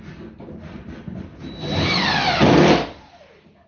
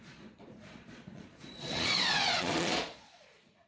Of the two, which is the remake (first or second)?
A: second